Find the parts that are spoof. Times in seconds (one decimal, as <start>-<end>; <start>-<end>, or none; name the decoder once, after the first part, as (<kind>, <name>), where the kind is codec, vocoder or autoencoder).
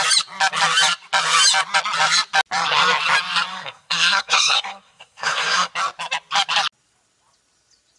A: 3.5-5.7 (codec, SNAC)